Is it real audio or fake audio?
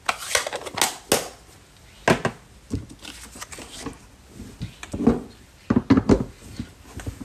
real